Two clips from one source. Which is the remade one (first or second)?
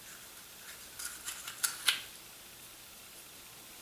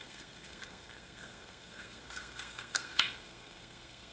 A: second